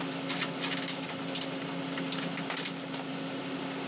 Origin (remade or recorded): recorded